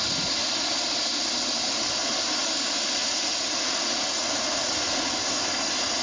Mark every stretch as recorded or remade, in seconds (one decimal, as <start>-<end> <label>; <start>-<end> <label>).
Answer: 0.0-3.0 recorded; 3.0-5.1 remade; 5.1-6.0 recorded